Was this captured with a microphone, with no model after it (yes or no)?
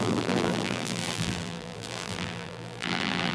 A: no